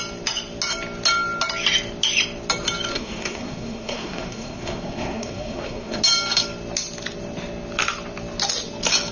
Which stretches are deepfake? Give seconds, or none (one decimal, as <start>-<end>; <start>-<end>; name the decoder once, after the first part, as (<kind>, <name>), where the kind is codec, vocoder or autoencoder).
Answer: 2.9-6.0 (codec, SNAC)